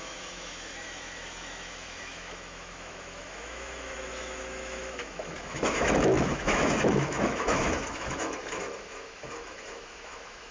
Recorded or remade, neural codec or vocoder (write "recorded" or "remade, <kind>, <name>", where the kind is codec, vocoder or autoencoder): remade, autoencoder, DAC-VAE